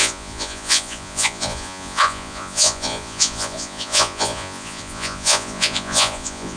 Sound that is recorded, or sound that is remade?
remade